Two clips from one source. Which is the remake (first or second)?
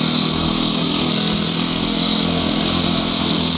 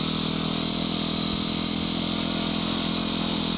first